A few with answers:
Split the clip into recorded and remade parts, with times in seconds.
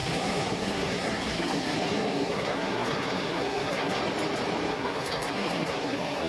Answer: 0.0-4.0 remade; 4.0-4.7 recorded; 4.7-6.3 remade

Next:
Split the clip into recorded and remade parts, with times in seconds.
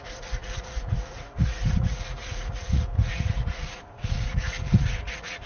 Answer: 0.0-5.5 remade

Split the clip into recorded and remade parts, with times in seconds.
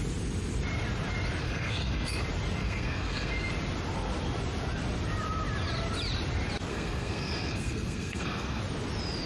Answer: 0.0-1.4 recorded; 1.4-2.2 remade; 2.2-2.6 recorded; 2.6-3.5 remade; 3.5-6.7 recorded; 6.7-8.6 remade; 8.6-9.3 recorded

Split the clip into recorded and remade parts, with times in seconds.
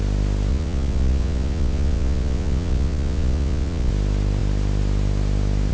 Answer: 0.0-0.5 recorded; 0.5-3.9 remade; 3.9-5.7 recorded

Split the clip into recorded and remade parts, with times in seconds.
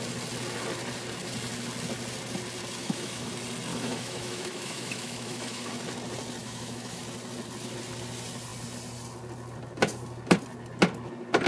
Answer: 0.0-2.8 recorded; 2.8-3.3 remade; 3.3-3.7 recorded; 3.7-5.7 remade; 5.7-6.4 recorded; 6.4-7.0 remade; 7.0-11.5 recorded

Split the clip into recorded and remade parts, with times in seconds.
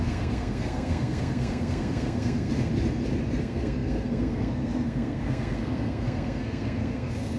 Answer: 0.0-2.7 remade; 2.7-3.4 recorded; 3.4-7.4 remade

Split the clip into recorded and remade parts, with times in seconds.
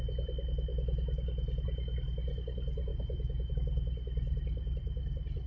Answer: 0.0-5.5 recorded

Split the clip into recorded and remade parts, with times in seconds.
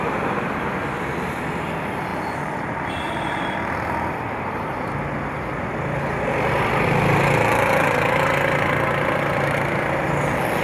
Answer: 0.0-10.6 recorded